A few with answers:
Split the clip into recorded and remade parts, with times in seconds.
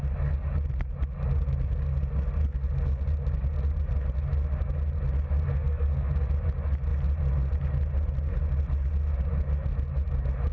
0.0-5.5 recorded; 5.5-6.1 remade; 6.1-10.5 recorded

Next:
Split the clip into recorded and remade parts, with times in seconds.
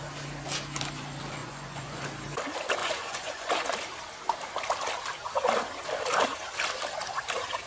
0.0-1.4 recorded; 1.4-2.0 remade; 2.0-2.8 recorded; 2.8-3.5 remade; 3.5-7.7 recorded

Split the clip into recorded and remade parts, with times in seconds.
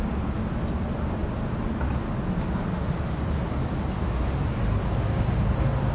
0.0-5.9 recorded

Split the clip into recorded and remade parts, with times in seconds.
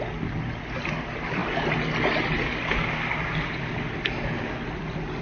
0.0-5.2 recorded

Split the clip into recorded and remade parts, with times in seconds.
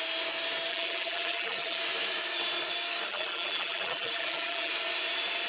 0.0-0.7 recorded; 0.7-1.8 remade; 1.8-3.1 recorded; 3.1-4.7 remade; 4.7-5.5 recorded